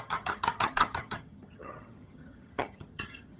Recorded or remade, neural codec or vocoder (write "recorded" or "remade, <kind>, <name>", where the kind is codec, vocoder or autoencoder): remade, vocoder, HiFi-GAN